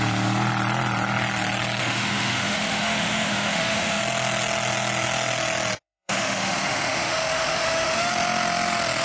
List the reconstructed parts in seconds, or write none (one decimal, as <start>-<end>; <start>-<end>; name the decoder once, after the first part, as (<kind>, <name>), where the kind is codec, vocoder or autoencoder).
1.8-4.0 (autoencoder, DAC-VAE); 5.8-8.1